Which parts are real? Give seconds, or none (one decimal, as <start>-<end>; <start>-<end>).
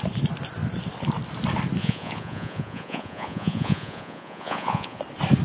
0.0-1.8; 5.0-5.4